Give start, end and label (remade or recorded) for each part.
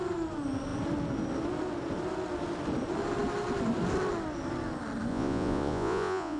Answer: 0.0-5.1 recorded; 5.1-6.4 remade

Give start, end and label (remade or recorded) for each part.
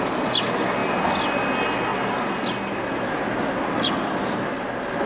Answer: 0.0-5.1 recorded